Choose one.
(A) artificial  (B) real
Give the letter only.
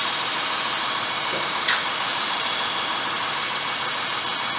B